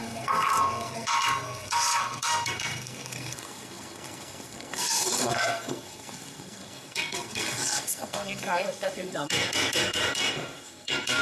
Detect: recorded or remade remade